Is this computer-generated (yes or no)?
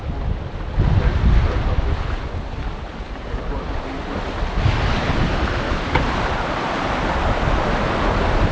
no